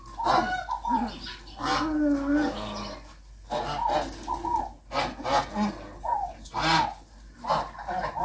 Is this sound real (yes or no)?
yes